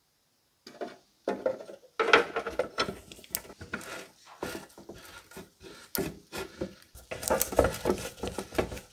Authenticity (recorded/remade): recorded